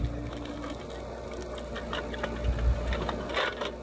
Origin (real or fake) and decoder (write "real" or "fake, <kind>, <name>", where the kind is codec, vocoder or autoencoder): real